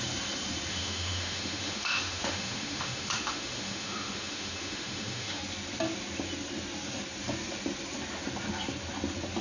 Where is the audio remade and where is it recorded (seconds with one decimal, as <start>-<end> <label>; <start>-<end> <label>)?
0.0-0.7 recorded; 0.7-5.4 remade; 5.4-9.4 recorded